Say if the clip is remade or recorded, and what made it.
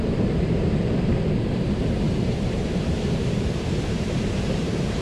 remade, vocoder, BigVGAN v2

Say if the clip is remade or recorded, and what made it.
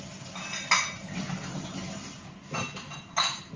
recorded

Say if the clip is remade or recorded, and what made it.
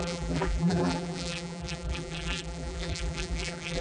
remade, vocoder, BigVGAN v2